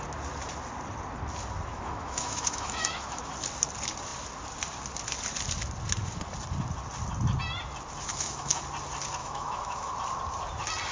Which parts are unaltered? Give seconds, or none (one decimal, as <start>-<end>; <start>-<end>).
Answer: 0.0-1.7; 3.3-8.1; 8.6-9.2; 9.9-10.9